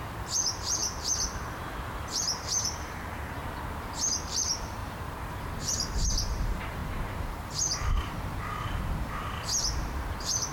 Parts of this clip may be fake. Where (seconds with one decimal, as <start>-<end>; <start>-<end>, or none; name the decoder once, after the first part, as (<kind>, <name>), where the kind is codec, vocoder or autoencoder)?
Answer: 0.0-3.4 (vocoder, BigVGAN v2); 4.0-10.5